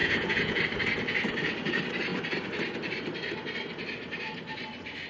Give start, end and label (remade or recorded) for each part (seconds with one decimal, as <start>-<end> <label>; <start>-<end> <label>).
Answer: 0.0-0.6 remade; 0.6-5.1 recorded